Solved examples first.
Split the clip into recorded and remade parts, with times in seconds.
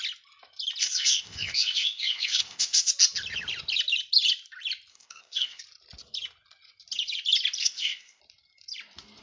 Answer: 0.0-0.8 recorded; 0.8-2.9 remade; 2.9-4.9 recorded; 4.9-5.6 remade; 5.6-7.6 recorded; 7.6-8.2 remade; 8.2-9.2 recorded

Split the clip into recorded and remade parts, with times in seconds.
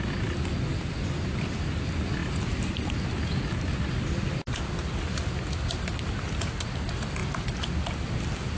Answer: 0.0-8.6 recorded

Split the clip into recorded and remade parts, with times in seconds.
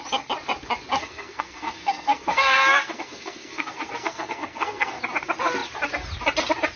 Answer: 0.0-1.0 recorded; 1.0-5.0 remade; 5.0-6.8 recorded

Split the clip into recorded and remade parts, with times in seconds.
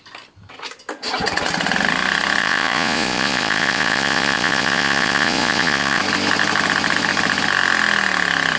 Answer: 0.0-2.4 recorded; 2.4-6.0 remade; 6.0-8.6 recorded